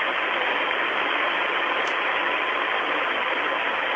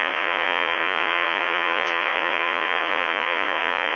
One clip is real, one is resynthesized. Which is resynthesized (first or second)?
second